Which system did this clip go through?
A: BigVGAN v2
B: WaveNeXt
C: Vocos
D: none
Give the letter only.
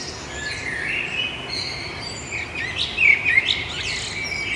D